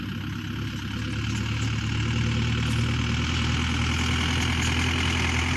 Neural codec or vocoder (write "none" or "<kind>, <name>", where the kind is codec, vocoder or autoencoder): none